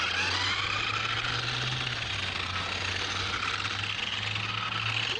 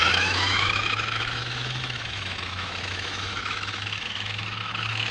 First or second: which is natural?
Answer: first